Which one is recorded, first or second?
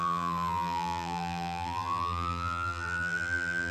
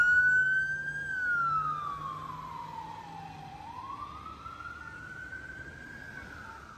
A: second